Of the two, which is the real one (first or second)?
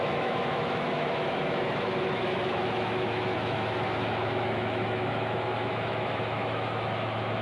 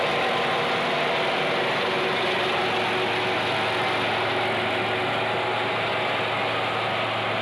second